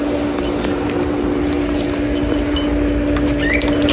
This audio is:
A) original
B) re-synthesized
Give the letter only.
A